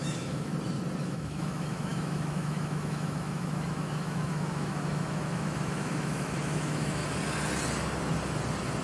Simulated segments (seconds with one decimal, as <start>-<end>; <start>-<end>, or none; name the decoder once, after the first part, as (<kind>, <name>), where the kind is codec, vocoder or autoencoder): 0.0-0.5 (autoencoder, DAC-VAE); 1.0-7.0

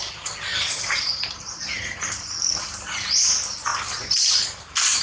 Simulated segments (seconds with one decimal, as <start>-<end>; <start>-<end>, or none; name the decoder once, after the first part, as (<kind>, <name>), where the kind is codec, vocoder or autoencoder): none